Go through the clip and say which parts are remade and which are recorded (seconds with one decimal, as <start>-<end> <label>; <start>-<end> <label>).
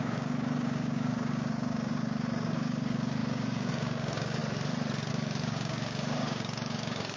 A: 0.0-4.4 remade; 4.4-5.1 recorded; 5.1-7.2 remade